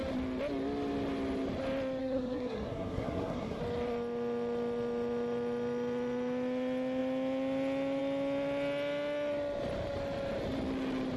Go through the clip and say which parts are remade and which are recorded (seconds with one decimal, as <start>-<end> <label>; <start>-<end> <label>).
0.0-2.0 recorded; 2.0-3.6 remade; 3.6-11.2 recorded